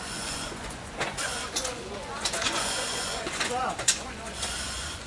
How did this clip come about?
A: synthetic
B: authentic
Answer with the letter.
A